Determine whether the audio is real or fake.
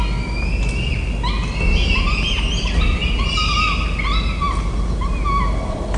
real